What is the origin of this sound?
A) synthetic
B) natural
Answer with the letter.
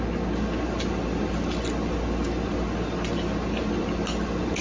B